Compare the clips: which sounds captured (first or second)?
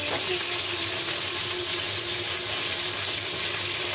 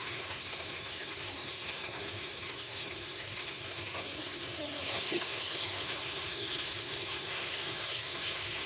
first